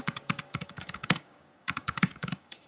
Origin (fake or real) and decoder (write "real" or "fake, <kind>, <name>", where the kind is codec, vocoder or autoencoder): fake, codec, DAC